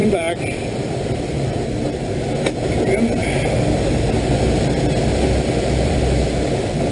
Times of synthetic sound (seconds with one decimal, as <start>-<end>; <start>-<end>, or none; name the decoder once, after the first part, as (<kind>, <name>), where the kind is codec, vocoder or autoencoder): 0.0-1.7 (vocoder, BigVGAN v2); 5.1-6.9